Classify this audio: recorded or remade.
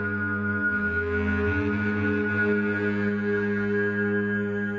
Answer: recorded